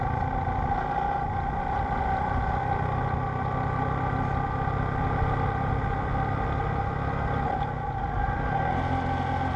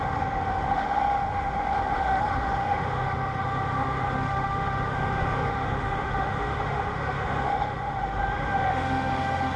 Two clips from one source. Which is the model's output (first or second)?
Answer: second